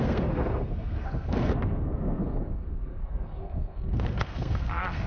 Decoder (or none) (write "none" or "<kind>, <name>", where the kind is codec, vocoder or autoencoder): codec, SNAC